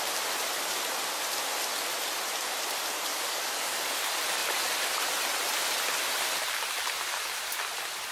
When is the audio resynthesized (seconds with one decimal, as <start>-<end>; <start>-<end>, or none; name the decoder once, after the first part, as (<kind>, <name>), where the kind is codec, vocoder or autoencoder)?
3.1-3.9 (codec, DAC)